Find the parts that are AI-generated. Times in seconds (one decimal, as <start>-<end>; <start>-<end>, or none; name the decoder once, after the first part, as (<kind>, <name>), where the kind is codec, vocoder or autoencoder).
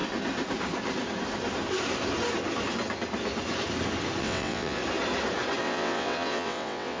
4.2-4.8 (vocoder, WaveNeXt); 5.6-7.0